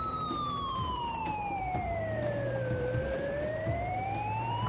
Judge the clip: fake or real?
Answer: fake